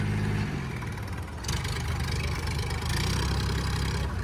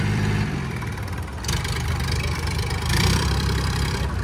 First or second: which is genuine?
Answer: first